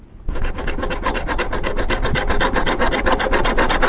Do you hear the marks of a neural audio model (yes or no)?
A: no